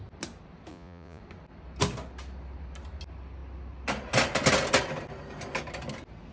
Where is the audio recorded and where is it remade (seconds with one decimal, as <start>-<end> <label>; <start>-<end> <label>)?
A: 0.0-0.7 recorded; 0.7-1.2 remade; 1.2-6.3 recorded